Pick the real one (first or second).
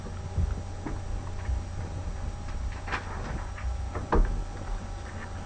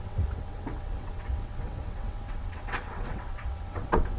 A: first